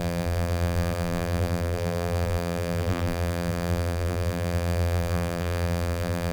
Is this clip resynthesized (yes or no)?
yes